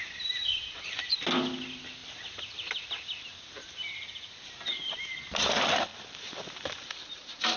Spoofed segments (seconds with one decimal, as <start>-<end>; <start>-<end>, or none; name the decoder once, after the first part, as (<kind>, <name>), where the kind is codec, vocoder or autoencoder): 0.0-1.2 (vocoder, BigVGAN v2); 5.9-7.6